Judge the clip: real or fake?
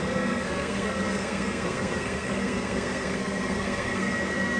fake